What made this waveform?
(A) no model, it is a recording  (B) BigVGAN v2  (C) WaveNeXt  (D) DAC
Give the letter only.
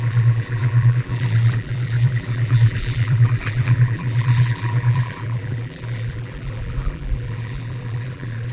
B